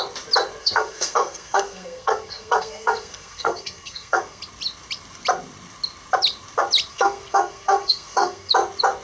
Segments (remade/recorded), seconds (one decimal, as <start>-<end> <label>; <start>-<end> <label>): 0.0-0.6 recorded; 0.6-4.4 remade; 4.4-6.9 recorded; 6.9-8.5 remade; 8.5-9.0 recorded